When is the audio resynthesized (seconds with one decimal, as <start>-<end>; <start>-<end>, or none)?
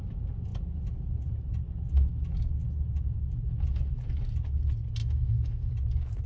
5.0-5.7